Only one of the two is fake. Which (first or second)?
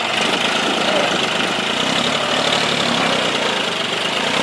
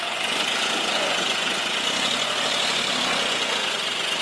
second